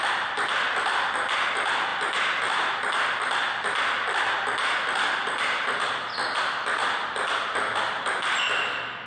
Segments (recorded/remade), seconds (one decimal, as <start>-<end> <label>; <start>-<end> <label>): 0.0-9.1 recorded